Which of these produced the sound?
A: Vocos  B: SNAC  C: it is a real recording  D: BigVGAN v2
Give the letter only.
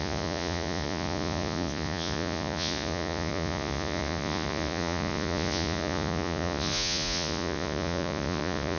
A